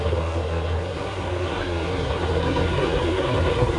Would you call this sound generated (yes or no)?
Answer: yes